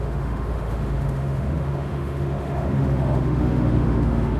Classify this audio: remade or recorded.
remade